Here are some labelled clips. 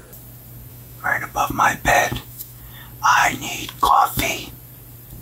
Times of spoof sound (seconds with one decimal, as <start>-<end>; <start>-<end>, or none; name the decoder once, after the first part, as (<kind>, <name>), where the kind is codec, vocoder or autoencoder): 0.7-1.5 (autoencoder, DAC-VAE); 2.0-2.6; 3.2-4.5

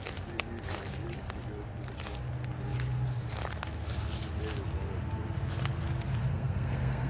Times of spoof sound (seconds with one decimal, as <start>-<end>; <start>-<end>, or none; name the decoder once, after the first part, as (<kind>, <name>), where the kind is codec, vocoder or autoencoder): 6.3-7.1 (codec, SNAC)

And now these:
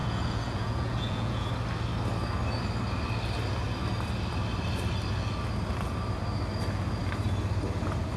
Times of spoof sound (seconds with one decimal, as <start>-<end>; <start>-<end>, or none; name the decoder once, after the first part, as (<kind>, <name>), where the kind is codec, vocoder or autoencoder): 0.0-1.5 (vocoder, Vocos)